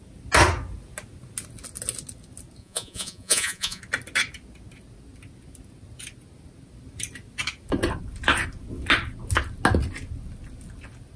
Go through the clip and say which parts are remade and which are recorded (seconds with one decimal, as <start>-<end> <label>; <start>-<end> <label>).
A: 0.0-2.6 recorded; 2.6-3.8 remade; 3.8-11.2 recorded